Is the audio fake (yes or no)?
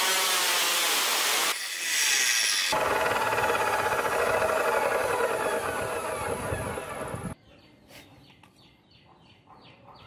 no